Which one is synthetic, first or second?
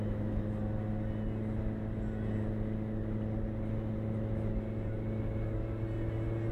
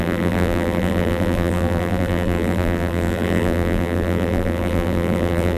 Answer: second